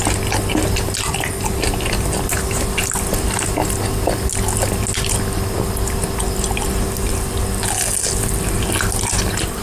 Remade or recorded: recorded